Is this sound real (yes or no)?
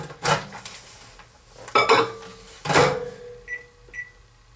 yes